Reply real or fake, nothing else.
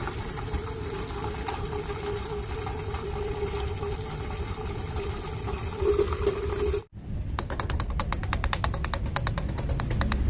real